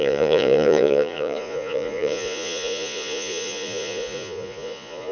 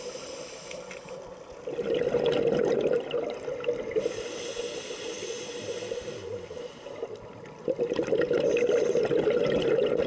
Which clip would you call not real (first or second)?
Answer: first